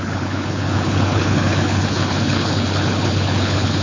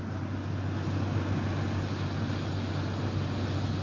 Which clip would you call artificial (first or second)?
first